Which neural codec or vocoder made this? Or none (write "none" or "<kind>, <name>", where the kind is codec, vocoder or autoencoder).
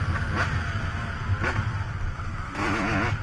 none